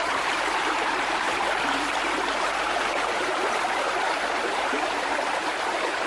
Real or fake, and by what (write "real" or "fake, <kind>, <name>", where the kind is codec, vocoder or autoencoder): fake, vocoder, BigVGAN v2